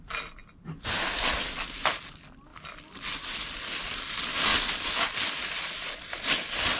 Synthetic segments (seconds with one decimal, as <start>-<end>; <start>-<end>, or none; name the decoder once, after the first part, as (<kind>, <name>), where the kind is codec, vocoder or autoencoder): none